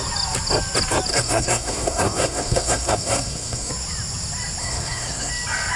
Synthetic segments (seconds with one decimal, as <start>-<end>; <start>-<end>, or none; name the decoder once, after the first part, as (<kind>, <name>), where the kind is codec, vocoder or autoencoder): 1.1-3.7 (codec, SNAC); 4.6-5.3